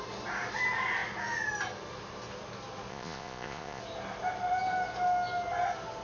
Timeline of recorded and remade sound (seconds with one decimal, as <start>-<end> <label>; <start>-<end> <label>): 0.0-2.9 recorded; 2.9-3.8 remade; 3.8-6.0 recorded